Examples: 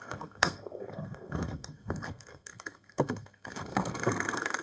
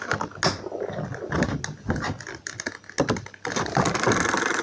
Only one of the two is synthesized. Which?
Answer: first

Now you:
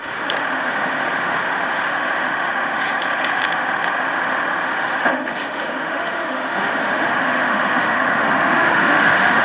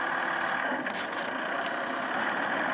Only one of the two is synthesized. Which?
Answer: first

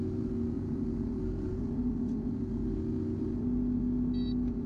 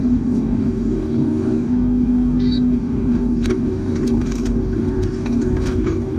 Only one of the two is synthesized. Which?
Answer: second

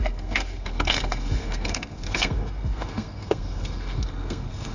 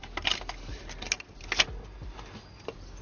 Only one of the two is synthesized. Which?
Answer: first